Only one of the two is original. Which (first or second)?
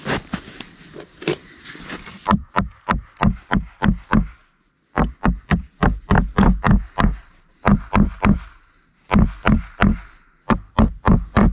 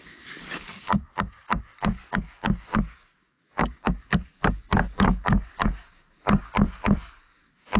first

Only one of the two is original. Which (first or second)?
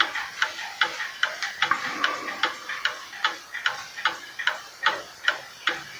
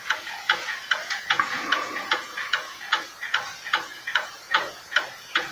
first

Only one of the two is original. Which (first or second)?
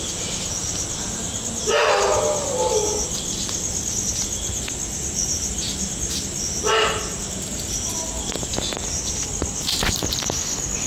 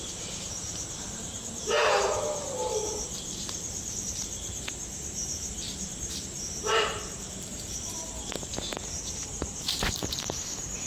first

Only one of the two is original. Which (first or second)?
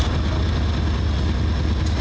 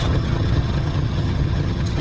first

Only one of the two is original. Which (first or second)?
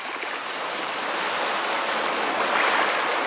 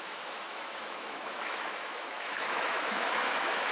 first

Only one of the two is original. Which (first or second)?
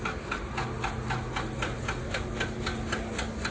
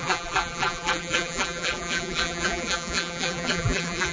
first